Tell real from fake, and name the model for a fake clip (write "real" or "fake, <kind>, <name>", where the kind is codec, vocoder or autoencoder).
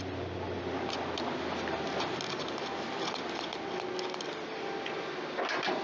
real